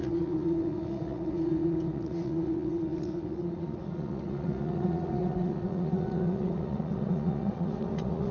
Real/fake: fake